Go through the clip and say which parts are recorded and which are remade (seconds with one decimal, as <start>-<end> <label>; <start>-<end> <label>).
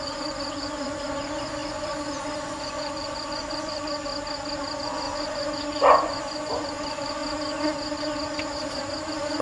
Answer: 0.0-4.1 remade; 4.1-4.8 recorded; 4.8-7.2 remade; 7.2-9.4 recorded